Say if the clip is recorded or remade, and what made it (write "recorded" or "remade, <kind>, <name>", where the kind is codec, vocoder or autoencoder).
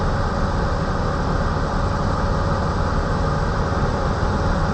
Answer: recorded